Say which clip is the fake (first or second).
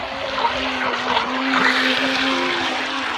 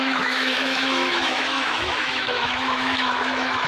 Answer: second